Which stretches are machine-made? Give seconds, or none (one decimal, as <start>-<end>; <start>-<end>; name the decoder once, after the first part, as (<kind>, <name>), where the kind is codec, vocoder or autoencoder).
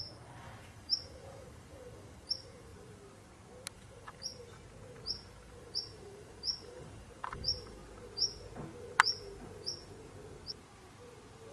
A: 0.0-2.7 (vocoder, BigVGAN v2); 3.7-4.3; 5.5-7.8